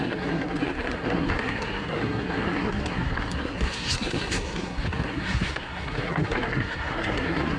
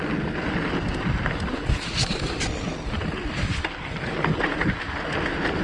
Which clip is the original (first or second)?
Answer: second